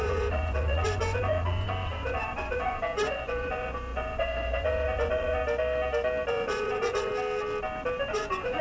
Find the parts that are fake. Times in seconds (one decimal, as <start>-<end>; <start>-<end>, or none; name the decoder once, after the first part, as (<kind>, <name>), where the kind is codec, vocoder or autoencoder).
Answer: 0.0-5.4 (vocoder, Vocos); 6.3-7.1; 8.1-8.6